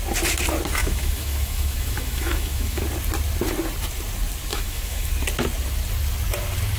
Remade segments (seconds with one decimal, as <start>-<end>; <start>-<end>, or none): 0.8-2.8; 4.5-5.1